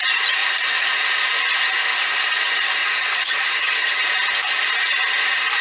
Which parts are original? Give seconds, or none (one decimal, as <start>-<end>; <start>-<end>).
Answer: 0.0-2.8; 4.0-5.6